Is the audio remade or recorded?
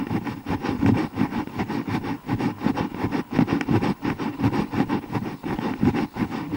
recorded